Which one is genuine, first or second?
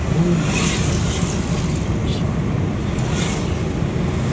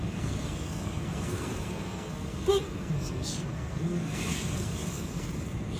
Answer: first